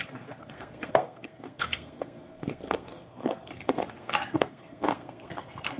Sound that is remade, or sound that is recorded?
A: remade